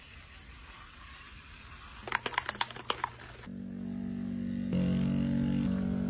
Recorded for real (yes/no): yes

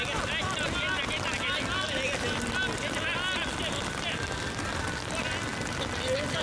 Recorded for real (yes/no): yes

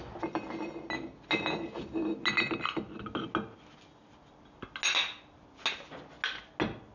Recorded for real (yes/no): yes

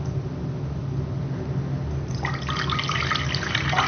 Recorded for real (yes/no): yes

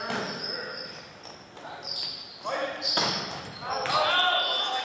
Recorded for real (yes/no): yes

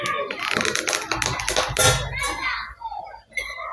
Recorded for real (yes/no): yes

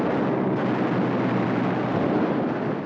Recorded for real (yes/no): yes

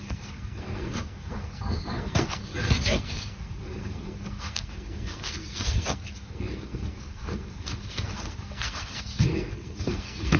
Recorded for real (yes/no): no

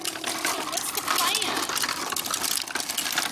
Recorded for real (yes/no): yes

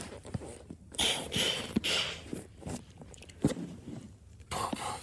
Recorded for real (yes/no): no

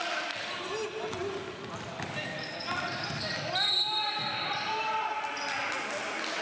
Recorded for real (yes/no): yes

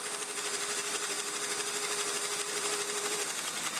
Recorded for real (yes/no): no